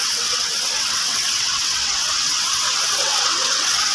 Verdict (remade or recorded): remade